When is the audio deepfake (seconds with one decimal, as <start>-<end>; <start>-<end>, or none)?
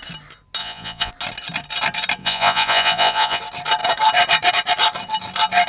0.6-1.1; 2.2-3.4